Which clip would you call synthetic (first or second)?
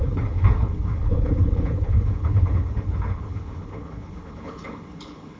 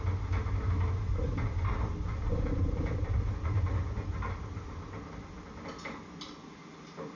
first